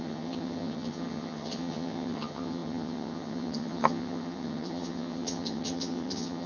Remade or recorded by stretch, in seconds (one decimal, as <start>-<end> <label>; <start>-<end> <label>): 0.0-6.5 remade